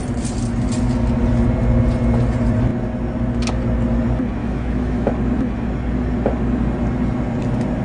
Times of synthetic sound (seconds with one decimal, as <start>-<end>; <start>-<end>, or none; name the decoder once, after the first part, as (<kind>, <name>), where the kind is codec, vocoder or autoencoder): 4.4-5.1 (autoencoder, DAC-VAE)